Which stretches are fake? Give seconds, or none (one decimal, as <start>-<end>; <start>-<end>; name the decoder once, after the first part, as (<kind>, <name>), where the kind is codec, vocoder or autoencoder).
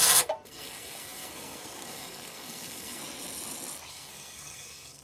0.0-3.0 (codec, SNAC); 3.9-5.0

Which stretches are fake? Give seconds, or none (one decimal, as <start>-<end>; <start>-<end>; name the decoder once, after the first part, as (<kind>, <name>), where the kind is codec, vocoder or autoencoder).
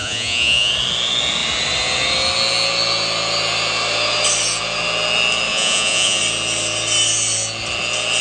0.0-0.7 (vocoder, Vocos); 5.5-6.2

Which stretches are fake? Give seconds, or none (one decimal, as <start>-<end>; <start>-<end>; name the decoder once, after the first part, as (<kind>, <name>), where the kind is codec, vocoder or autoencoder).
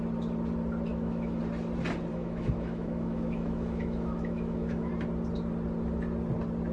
0.9-1.4 (autoencoder, DAC-VAE); 2.1-4.9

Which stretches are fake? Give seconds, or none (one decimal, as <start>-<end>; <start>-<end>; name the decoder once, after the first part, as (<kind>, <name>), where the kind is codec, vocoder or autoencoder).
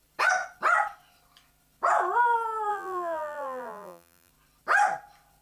2.7-4.3 (vocoder, BigVGAN v2)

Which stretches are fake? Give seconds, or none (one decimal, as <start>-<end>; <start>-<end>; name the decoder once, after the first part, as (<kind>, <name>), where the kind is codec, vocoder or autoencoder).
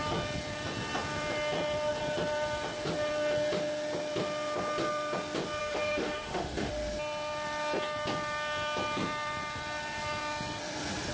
5.6-6.7 (autoencoder, DAC-VAE)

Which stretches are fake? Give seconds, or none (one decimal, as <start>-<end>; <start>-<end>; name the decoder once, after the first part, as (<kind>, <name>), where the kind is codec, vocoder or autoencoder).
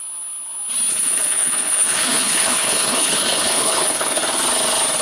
0.9-4.2 (codec, HILCodec)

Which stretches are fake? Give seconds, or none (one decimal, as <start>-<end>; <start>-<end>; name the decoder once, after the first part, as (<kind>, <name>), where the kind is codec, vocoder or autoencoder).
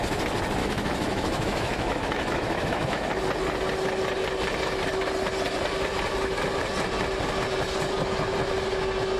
0.6-3.1 (autoencoder, DAC-VAE)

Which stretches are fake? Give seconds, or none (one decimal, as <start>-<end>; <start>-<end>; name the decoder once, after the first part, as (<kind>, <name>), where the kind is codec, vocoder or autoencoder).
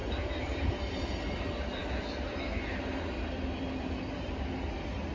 0.0-0.7 (vocoder, BigVGAN v2)